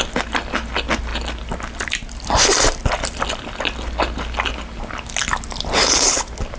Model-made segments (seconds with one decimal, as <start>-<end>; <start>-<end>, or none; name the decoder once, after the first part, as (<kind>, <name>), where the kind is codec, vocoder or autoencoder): none

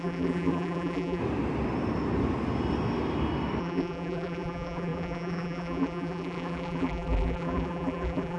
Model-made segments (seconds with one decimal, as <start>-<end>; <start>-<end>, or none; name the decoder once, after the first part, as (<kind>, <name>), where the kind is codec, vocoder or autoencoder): 0.0-1.2 (vocoder, BigVGAN v2); 3.6-8.4

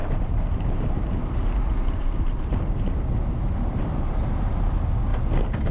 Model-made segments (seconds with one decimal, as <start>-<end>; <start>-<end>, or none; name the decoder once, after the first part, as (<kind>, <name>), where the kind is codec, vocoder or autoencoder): 0.0-2.6 (vocoder, BigVGAN v2); 5.1-5.7

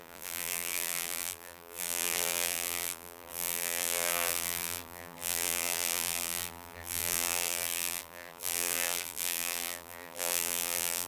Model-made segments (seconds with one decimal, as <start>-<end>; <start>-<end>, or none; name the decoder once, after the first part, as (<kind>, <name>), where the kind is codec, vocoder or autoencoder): 0.0-11.1 (vocoder, BigVGAN v2)

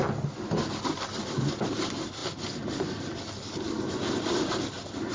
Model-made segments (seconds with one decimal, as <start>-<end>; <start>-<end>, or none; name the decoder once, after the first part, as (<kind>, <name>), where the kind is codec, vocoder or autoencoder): none

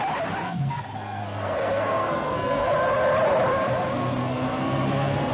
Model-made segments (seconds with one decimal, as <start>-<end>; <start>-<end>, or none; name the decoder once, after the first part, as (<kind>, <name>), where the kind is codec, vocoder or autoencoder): 0.4-2.7 (codec, SNAC); 4.2-5.3

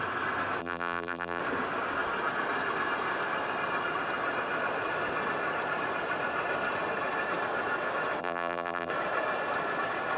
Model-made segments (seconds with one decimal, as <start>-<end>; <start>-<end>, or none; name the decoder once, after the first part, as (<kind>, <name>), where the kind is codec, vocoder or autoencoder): 0.6-1.4 (vocoder, BigVGAN v2); 8.2-8.9